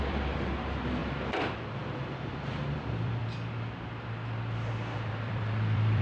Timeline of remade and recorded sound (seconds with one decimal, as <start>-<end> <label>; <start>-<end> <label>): 0.0-3.2 remade; 3.2-5.1 recorded; 5.1-6.0 remade

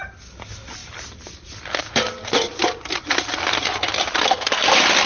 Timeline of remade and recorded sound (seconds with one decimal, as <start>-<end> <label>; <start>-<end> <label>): 0.0-0.8 recorded; 0.8-3.9 remade; 3.9-5.1 recorded

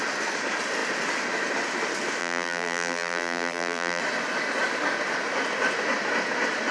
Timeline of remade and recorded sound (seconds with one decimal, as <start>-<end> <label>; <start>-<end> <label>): 0.0-2.2 recorded; 2.2-4.0 remade; 4.0-6.7 recorded

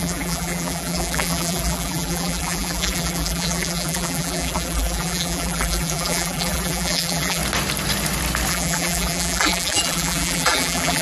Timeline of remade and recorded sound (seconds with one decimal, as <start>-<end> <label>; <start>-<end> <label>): 0.0-7.4 remade; 7.4-8.5 recorded; 8.5-11.0 remade